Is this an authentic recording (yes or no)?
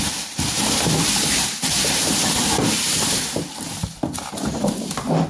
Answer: no